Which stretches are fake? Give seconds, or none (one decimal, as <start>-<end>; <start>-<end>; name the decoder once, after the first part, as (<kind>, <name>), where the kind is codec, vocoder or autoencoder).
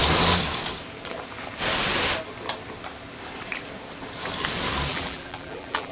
4.9-5.9 (vocoder, BigVGAN v2)